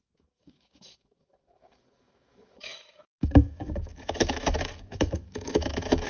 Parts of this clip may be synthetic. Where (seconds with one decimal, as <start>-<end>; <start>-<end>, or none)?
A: 0.0-6.1